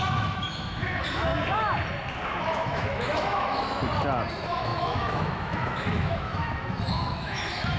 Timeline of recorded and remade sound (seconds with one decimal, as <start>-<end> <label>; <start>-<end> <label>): 0.0-1.3 remade; 1.3-2.4 recorded; 2.4-3.8 remade; 3.8-4.3 recorded; 4.3-7.8 remade